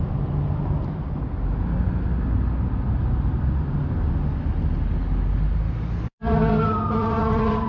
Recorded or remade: recorded